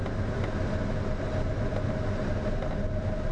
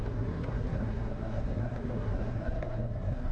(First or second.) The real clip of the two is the first